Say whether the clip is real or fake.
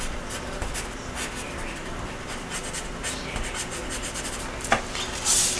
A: fake